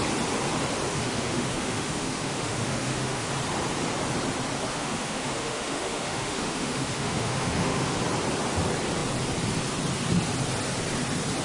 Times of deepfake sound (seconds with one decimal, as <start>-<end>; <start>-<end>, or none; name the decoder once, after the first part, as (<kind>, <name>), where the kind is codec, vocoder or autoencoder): 0.9-3.3 (autoencoder, DAC-VAE); 4.7-8.0